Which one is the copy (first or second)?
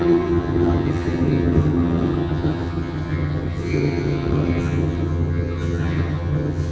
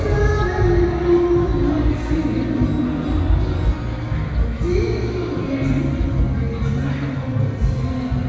first